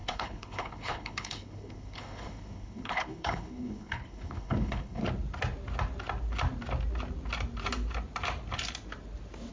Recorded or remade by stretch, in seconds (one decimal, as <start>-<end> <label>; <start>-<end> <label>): 0.0-5.0 remade; 5.0-9.5 recorded